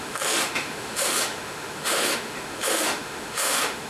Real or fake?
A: fake